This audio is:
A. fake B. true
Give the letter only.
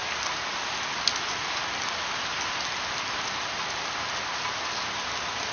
B